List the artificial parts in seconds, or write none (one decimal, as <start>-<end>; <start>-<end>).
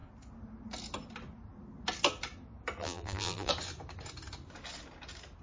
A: 2.8-3.5